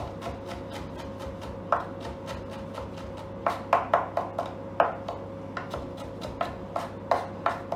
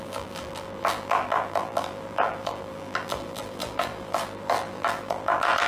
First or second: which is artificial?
second